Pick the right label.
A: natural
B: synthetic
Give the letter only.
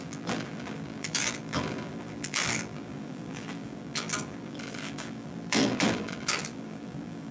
B